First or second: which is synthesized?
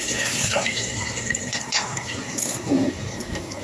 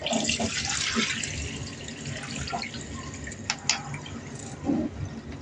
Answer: first